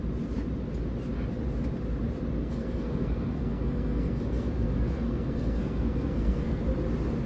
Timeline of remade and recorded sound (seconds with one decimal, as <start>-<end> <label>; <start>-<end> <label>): 0.0-2.4 recorded; 2.4-6.6 remade; 6.6-7.3 recorded